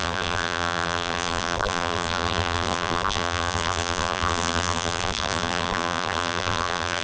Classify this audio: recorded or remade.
remade